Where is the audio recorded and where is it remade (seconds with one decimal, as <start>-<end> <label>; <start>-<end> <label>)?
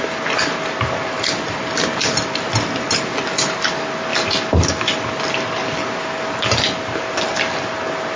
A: 0.0-8.2 recorded